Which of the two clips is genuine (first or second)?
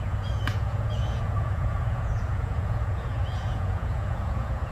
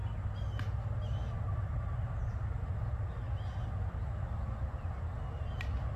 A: second